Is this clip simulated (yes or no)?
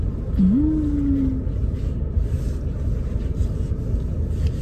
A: no